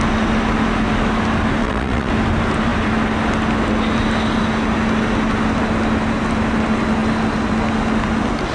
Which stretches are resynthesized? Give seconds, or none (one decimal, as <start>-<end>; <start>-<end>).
1.6-2.1